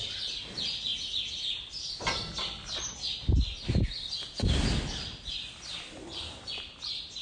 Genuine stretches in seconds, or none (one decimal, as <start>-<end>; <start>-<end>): 0.0-7.2